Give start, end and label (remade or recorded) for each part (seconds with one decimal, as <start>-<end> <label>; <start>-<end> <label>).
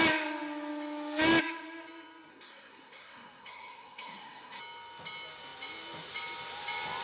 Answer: 0.0-2.3 recorded; 2.3-4.6 remade; 4.6-7.0 recorded